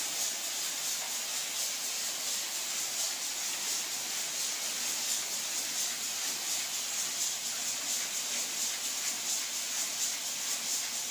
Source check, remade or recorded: recorded